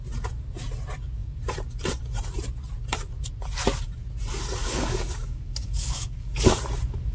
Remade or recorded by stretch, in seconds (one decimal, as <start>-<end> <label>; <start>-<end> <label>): 0.0-4.6 recorded; 4.6-6.6 remade; 6.6-7.1 recorded